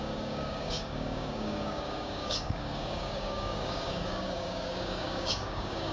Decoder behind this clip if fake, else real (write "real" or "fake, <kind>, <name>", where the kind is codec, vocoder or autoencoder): fake, codec, DAC